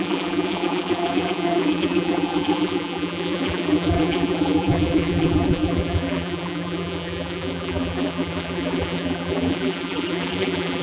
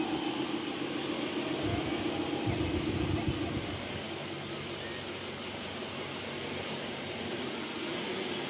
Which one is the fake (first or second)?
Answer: first